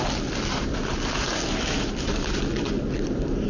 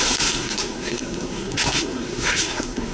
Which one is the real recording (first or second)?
first